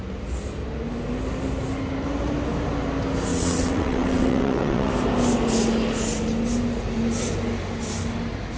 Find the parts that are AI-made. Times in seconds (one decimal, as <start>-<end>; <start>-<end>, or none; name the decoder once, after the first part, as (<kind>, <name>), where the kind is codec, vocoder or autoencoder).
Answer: 3.3-4.9 (vocoder, WaveNeXt)